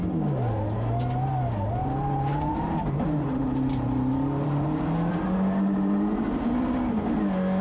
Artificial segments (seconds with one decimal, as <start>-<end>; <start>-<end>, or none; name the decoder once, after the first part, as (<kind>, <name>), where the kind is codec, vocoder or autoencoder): 1.8-6.4 (vocoder, BigVGAN v2)